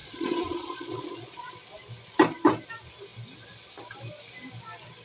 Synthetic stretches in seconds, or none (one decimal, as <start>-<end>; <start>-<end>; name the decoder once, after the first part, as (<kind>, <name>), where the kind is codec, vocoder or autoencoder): 0.0-1.5 (vocoder, Vocos)